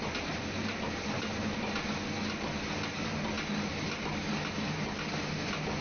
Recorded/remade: recorded